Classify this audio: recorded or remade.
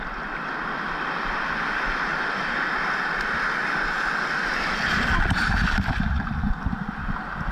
recorded